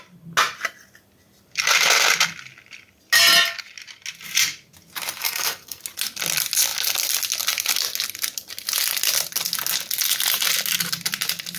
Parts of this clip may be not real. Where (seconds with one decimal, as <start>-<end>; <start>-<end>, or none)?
5.2-5.8